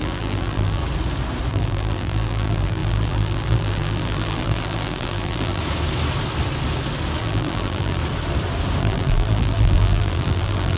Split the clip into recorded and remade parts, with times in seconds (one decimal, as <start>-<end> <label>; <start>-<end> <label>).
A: 0.0-0.8 remade; 0.8-1.5 recorded; 1.5-5.6 remade; 5.6-7.2 recorded; 7.2-8.0 remade; 8.0-8.8 recorded; 8.8-10.8 remade